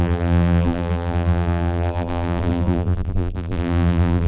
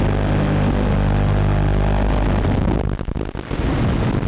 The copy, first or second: first